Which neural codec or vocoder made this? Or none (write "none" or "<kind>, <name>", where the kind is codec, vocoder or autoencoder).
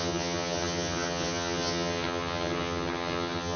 vocoder, HiFi-GAN